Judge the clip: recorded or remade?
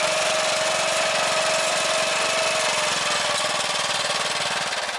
recorded